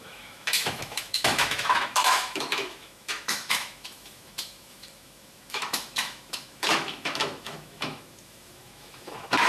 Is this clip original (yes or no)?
no